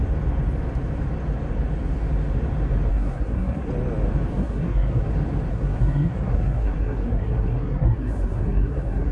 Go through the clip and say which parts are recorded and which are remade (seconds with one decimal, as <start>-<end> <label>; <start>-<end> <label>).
0.0-2.9 recorded; 2.9-3.7 remade; 3.7-4.3 recorded; 4.3-5.1 remade; 5.1-5.5 recorded; 5.5-9.1 remade